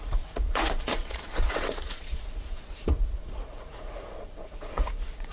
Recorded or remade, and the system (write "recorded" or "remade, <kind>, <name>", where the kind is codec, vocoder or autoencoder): remade, vocoder, Vocos